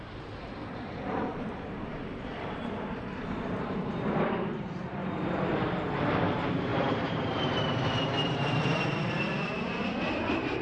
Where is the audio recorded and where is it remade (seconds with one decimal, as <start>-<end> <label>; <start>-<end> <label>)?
0.0-5.0 remade; 5.0-5.5 recorded; 5.5-10.6 remade